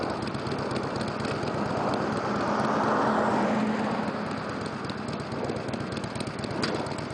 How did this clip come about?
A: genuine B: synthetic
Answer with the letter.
A